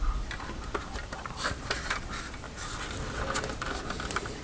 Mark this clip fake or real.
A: real